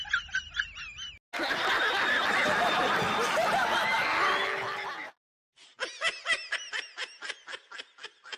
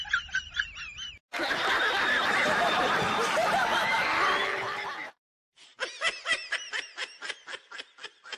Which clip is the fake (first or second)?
second